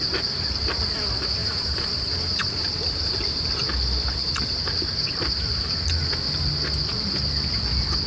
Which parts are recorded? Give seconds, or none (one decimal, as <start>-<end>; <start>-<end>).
0.0-1.4; 3.5-8.1